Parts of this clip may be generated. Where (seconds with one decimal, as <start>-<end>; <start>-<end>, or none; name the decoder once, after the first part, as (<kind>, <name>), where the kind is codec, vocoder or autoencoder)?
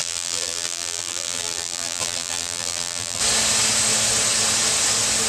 0.0-3.2 (vocoder, BigVGAN v2)